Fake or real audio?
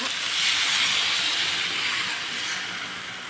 real